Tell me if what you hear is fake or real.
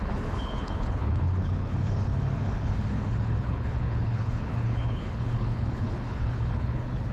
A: fake